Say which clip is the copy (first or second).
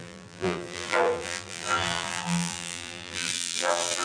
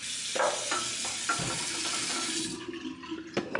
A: first